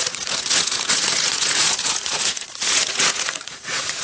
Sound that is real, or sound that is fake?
fake